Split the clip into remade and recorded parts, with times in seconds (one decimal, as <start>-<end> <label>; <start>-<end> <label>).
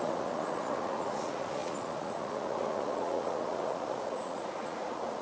0.0-5.2 remade